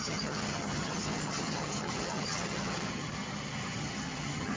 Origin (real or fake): fake